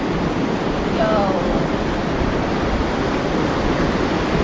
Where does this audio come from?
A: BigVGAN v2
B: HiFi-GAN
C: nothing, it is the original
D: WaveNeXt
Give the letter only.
C